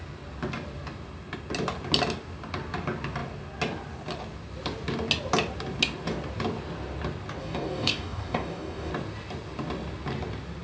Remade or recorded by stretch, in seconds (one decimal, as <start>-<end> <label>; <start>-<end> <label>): 0.0-7.4 recorded; 7.4-8.9 remade; 8.9-10.6 recorded